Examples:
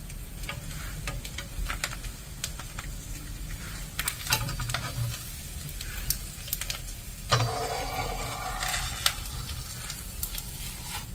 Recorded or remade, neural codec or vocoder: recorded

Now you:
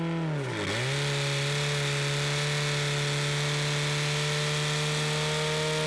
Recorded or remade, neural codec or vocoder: recorded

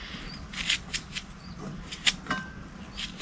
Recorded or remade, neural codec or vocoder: recorded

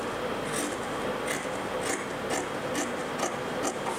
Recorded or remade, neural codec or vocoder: recorded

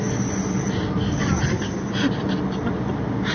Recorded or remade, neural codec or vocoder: recorded